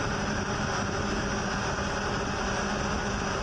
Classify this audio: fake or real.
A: real